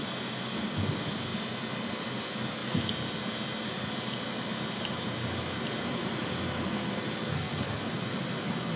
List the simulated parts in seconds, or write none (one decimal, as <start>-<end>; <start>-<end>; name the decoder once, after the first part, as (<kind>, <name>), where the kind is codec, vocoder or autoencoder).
7.3-7.8 (codec, SNAC)